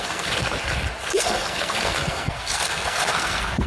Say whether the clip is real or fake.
fake